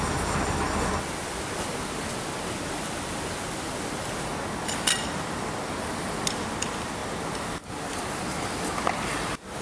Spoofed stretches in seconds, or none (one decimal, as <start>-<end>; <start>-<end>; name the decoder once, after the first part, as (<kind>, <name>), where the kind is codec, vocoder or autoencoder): none

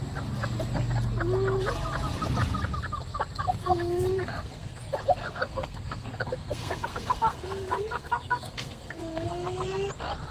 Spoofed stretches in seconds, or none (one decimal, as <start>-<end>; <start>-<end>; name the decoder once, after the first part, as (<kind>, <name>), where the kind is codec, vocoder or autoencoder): 3.6-4.8 (codec, SNAC); 5.2-9.9

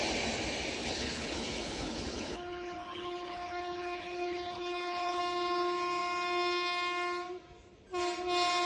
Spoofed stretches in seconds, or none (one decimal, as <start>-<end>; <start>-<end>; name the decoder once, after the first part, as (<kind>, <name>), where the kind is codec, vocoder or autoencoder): 0.8-5.2 (codec, HILCodec)

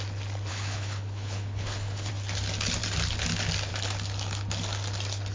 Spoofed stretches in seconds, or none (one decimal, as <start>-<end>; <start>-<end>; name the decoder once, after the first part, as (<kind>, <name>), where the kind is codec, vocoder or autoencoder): 0.5-2.1 (codec, HILCodec)

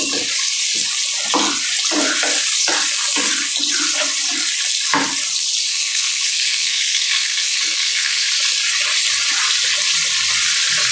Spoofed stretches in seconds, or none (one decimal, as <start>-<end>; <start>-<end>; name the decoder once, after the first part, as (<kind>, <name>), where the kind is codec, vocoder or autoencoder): 5.7-8.3 (codec, SNAC)

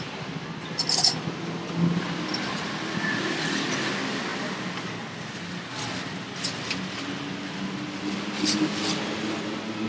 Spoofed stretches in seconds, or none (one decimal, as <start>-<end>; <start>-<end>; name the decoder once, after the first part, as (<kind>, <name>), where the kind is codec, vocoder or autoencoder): none